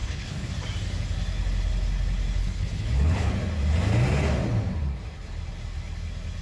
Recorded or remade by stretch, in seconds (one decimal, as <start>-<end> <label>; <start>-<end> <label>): 0.0-0.5 remade; 0.5-2.4 recorded; 2.4-3.3 remade; 3.3-6.4 recorded